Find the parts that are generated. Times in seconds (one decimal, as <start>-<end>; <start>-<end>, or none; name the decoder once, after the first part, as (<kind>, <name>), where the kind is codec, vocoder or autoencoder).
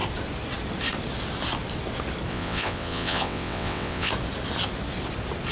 2.3-4.1 (vocoder, WaveNeXt)